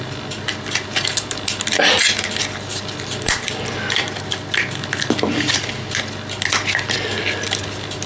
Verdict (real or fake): real